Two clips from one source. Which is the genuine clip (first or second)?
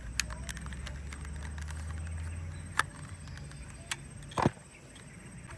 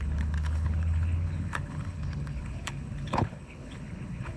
first